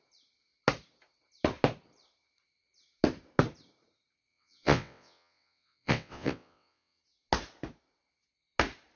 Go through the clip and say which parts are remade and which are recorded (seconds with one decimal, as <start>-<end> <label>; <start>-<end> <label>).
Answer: 0.0-4.3 recorded; 4.3-7.0 remade; 7.0-9.0 recorded